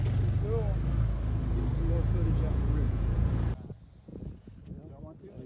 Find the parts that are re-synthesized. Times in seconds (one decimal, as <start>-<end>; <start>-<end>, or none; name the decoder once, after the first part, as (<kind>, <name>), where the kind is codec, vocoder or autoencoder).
1.7-3.3 (vocoder, Vocos); 4.1-5.0